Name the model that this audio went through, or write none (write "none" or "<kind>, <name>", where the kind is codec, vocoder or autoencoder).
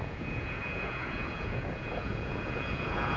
vocoder, Vocos